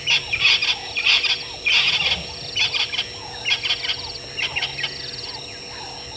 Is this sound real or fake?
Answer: real